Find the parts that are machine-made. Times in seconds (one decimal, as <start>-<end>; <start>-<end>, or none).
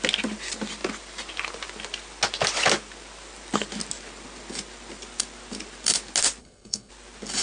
6.4-6.9